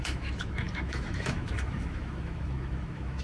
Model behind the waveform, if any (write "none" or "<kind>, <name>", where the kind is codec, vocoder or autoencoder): autoencoder, DAC-VAE